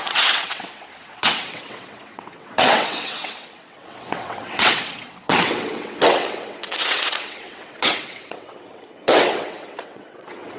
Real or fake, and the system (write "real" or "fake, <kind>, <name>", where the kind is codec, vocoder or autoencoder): fake, vocoder, WaveNeXt